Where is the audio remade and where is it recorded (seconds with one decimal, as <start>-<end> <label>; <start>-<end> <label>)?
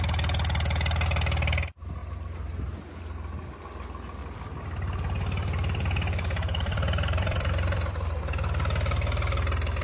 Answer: 0.0-4.2 recorded; 4.2-8.2 remade; 8.2-9.8 recorded